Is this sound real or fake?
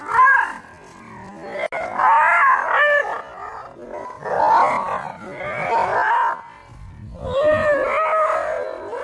real